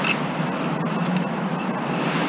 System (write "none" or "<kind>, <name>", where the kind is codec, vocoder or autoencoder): none